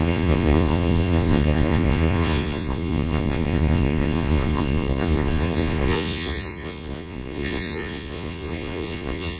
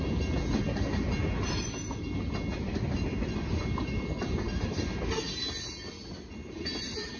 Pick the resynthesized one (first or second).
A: first